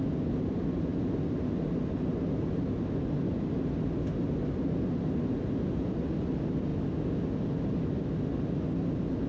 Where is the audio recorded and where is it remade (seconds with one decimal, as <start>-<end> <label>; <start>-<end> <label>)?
0.0-9.3 recorded

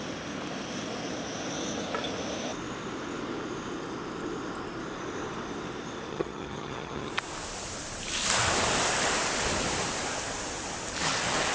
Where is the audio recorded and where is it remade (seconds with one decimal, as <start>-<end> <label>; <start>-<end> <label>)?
0.0-6.1 recorded; 6.1-7.1 remade; 7.1-11.5 recorded

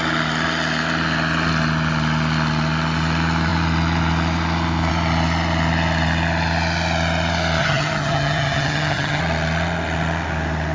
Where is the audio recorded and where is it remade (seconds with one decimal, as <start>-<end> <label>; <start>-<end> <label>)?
0.0-7.6 recorded; 7.6-9.2 remade; 9.2-10.7 recorded

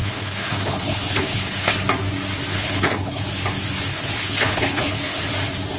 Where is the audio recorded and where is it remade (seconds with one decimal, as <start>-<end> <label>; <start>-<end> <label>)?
0.0-1.7 remade; 1.7-2.5 recorded; 2.5-3.2 remade; 3.2-3.9 recorded; 3.9-5.2 remade; 5.2-5.8 recorded

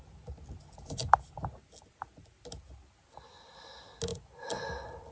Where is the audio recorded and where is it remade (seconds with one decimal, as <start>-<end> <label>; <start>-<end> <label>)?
0.0-5.1 recorded

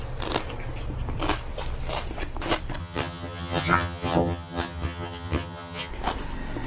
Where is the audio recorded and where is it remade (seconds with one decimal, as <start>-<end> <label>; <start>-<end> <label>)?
0.0-2.8 recorded; 2.8-5.9 remade; 5.9-6.7 recorded

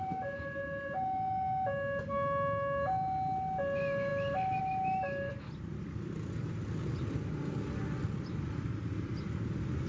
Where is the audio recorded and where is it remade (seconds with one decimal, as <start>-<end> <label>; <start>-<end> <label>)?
0.0-9.9 recorded

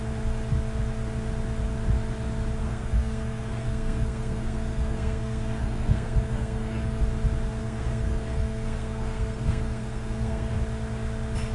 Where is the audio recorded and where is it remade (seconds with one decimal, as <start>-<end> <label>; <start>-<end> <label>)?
0.0-2.6 recorded; 2.6-7.0 remade; 7.0-7.6 recorded; 7.6-10.5 remade; 10.5-11.5 recorded